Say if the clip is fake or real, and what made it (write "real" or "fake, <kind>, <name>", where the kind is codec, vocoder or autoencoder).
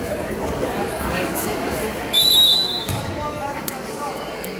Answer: fake, codec, DAC